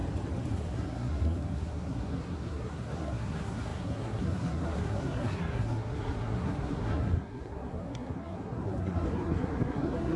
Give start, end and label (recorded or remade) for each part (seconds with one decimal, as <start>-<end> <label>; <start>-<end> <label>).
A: 0.0-0.5 recorded; 0.5-10.2 remade